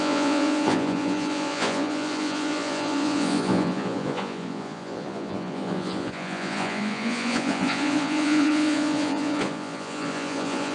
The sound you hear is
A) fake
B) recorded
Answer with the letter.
A